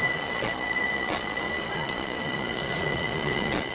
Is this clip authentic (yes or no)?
no